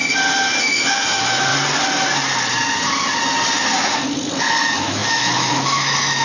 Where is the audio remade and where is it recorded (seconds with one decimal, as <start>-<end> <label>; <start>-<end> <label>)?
0.0-0.6 recorded; 0.6-1.5 remade; 1.5-4.4 recorded; 4.4-6.2 remade